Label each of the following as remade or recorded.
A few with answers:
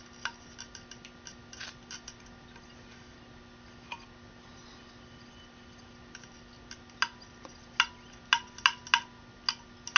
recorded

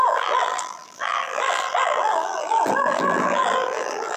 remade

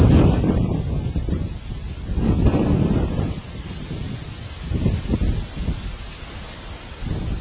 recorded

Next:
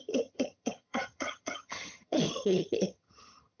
remade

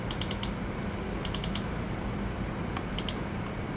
recorded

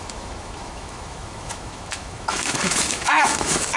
remade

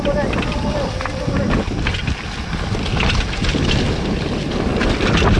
recorded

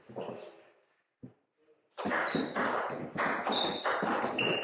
recorded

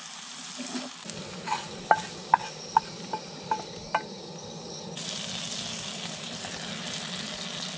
recorded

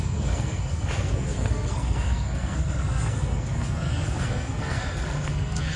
remade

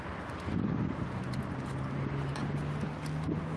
recorded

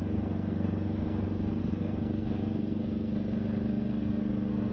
remade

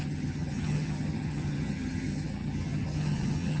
remade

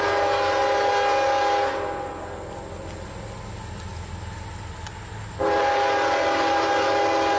recorded